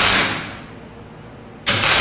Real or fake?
real